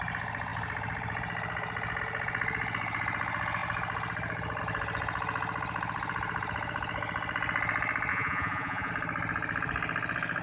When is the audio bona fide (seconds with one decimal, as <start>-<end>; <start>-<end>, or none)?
0.0-8.1; 8.9-10.4